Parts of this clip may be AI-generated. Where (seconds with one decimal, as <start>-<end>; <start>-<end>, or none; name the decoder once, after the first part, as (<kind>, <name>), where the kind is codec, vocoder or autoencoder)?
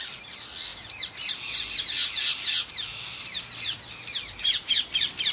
2.6-4.7 (vocoder, BigVGAN v2)